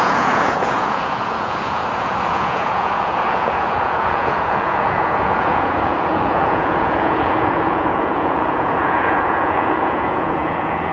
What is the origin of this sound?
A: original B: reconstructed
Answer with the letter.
B